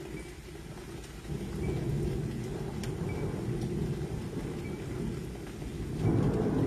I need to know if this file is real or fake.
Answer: real